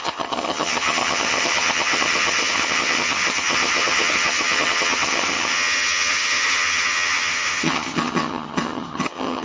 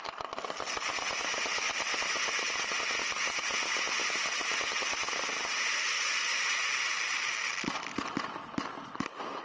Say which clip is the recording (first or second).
second